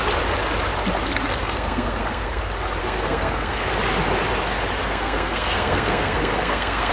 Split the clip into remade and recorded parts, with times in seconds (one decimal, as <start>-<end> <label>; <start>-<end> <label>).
0.0-1.3 recorded; 1.3-2.4 remade; 2.4-2.8 recorded; 2.8-3.7 remade; 3.7-4.8 recorded; 4.8-6.9 remade